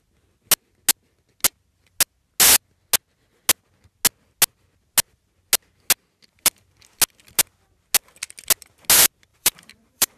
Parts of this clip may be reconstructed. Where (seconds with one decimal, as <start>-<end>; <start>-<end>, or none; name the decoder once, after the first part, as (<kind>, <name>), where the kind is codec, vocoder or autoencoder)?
9.3-10.2 (vocoder, BigVGAN v2)